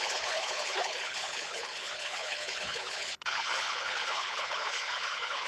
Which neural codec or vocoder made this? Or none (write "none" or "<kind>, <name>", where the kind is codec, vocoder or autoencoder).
codec, HILCodec